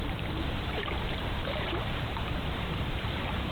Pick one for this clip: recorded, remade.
remade